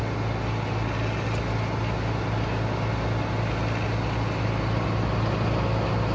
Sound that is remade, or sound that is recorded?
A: recorded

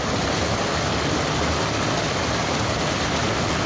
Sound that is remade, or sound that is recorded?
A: recorded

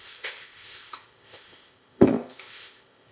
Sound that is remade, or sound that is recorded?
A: remade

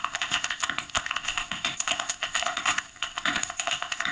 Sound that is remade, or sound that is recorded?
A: remade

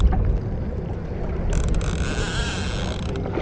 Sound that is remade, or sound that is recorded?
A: recorded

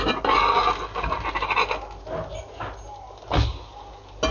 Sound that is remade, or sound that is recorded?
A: recorded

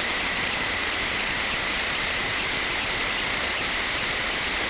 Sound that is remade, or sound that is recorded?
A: recorded